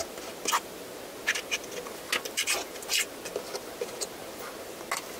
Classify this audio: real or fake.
real